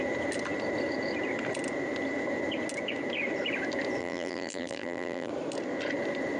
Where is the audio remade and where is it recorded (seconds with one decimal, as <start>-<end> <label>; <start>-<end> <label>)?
0.0-4.0 recorded; 4.0-5.3 remade; 5.3-6.4 recorded

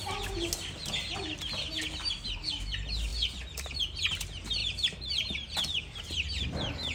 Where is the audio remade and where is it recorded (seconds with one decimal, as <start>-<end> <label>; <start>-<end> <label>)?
0.0-6.9 recorded

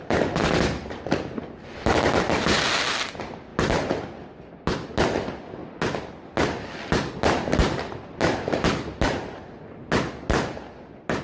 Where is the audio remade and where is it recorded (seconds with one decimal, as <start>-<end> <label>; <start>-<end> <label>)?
0.0-11.2 recorded

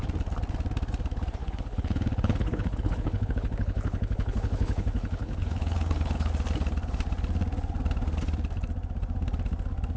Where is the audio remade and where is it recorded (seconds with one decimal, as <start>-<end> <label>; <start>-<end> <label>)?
0.0-1.4 recorded; 1.4-6.3 remade; 6.3-10.0 recorded

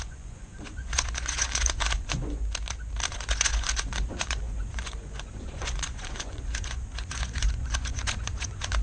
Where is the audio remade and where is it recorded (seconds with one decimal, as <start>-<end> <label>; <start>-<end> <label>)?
0.0-2.4 remade; 2.4-3.1 recorded; 3.1-8.8 remade